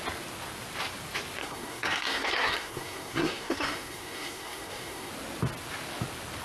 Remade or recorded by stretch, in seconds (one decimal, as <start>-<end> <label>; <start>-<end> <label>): 0.0-1.4 recorded; 1.4-5.1 remade; 5.1-6.4 recorded